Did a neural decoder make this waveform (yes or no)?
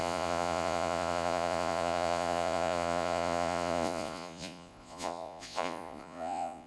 yes